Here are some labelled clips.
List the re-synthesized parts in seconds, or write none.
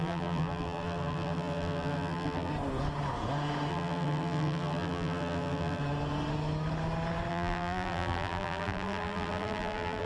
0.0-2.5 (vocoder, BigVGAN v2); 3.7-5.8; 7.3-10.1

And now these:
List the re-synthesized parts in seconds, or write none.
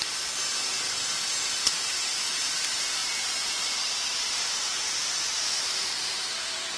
1.6-2.2 (vocoder, BigVGAN v2); 3.0-6.8